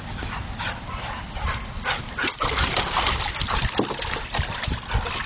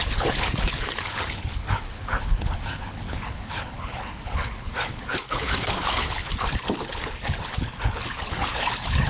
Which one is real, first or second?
first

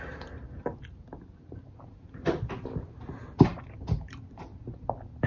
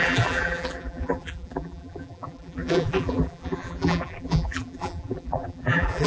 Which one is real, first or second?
first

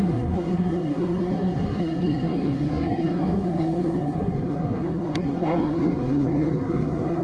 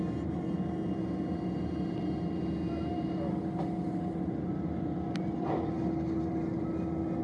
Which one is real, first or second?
second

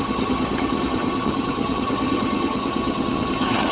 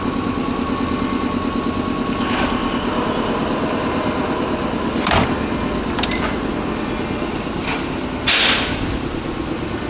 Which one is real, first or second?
second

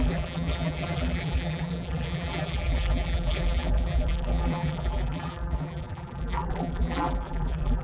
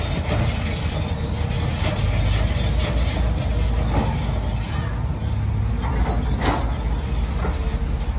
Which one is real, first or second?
second